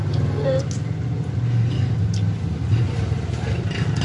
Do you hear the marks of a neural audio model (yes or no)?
no